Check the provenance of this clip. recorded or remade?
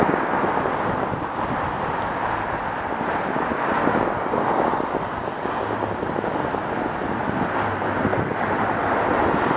recorded